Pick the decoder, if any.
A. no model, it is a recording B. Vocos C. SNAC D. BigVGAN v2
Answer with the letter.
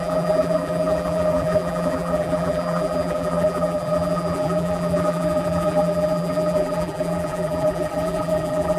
D